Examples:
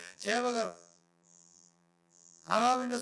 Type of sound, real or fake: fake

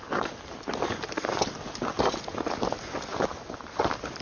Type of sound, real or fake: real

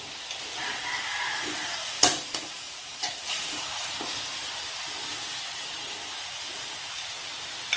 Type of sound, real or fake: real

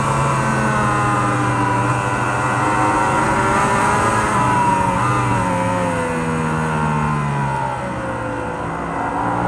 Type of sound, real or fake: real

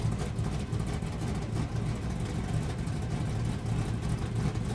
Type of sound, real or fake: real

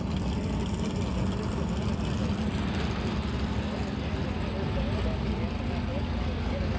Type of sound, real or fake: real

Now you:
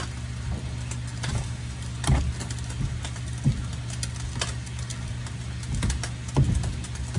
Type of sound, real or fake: real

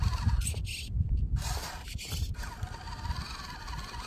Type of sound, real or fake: real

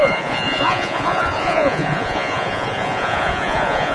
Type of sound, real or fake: fake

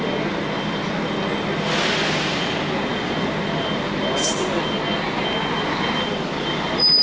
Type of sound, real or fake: real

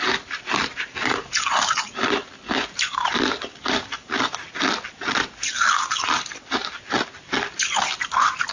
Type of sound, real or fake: real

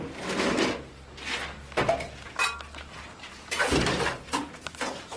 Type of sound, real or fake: real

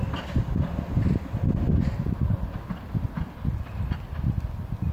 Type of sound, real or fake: real